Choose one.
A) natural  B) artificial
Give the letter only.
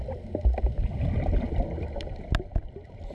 A